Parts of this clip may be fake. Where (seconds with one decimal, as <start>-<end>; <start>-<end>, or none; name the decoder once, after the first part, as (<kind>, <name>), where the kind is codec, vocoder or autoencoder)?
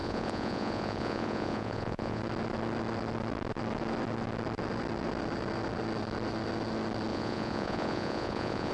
0.0-2.2 (vocoder, Vocos); 7.1-8.7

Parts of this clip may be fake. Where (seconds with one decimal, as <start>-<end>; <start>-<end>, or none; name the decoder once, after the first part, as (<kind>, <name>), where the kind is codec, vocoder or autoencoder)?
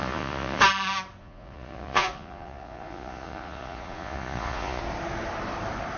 0.0-0.6 (vocoder, Vocos); 1.2-4.8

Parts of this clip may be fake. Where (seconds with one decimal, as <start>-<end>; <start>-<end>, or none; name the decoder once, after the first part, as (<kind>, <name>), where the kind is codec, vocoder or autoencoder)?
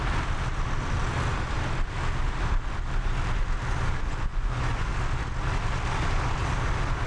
4.3-4.9 (vocoder, Vocos)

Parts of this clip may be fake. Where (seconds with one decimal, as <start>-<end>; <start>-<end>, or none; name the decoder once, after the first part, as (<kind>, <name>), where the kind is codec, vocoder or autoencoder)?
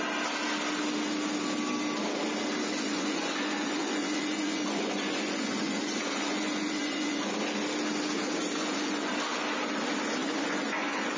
2.7-7.3 (vocoder, Vocos); 8.6-9.1; 10.2-11.2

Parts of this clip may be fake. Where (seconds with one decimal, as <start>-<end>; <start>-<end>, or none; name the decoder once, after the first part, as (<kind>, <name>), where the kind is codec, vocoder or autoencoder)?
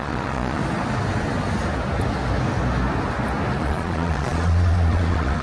0.0-0.6 (vocoder, Vocos); 3.6-5.4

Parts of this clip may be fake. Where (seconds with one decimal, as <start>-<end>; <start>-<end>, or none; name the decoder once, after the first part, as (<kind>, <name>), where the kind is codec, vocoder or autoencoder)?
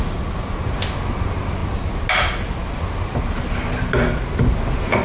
none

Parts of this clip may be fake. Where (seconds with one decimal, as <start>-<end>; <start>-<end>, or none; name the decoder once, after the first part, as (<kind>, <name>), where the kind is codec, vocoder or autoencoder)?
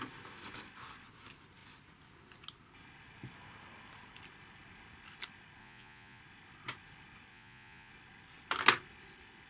5.6-6.2 (vocoder, Vocos); 7.3-7.9